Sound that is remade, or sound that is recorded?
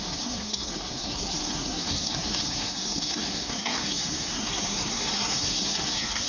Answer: remade